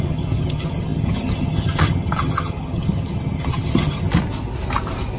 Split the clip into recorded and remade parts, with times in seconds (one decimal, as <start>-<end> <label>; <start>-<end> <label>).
0.0-4.1 remade; 4.1-5.2 recorded